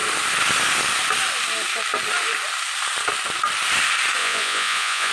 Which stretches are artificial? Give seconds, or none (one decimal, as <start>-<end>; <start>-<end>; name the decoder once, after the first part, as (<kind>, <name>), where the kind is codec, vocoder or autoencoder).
4.2-5.1 (vocoder, Vocos)